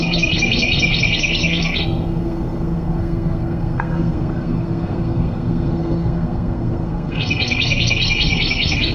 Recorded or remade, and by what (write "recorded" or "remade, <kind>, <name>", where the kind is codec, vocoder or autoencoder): remade, codec, SNAC